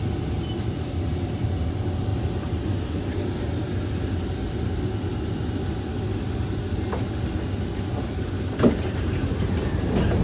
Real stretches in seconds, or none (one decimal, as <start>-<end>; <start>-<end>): 0.0-10.2